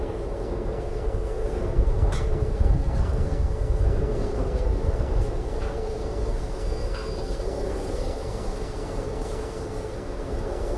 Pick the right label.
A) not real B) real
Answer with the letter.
A